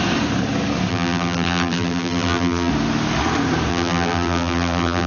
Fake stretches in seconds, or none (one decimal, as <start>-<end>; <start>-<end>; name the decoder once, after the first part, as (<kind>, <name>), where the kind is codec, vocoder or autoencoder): 0.9-2.7 (vocoder, BigVGAN v2); 3.7-5.1